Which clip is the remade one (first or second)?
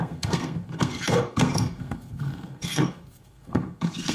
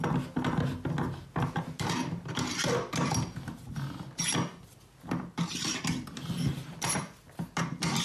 first